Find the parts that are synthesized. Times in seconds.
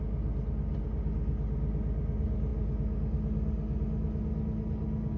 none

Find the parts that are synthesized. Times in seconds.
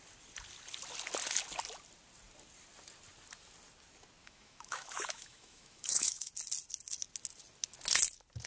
4.2-6.3 (autoencoder, DAC-VAE)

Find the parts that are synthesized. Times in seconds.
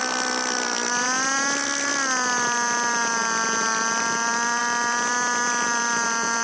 none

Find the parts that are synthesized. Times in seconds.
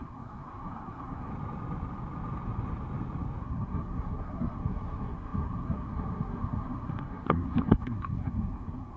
0.0-1.3 (codec, SNAC); 3.4-9.0